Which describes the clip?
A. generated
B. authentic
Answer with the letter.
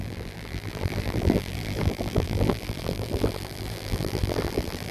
A